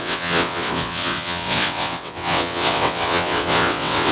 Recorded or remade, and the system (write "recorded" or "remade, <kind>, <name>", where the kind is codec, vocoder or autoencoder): remade, vocoder, WaveNeXt